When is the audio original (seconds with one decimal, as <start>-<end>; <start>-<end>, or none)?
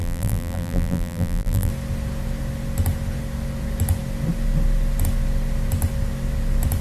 1.7-6.8